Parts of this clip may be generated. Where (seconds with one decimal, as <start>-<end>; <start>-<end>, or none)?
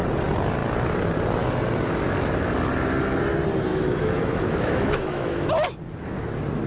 3.7-5.5